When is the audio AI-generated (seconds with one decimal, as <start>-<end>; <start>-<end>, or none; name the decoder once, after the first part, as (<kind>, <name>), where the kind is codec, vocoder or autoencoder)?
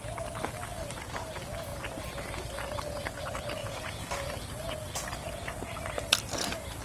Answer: 3.6-4.1 (vocoder, Vocos)